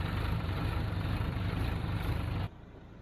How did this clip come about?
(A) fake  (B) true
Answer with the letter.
A